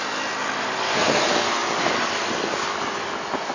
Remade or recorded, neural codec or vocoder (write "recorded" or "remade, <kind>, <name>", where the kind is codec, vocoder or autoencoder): recorded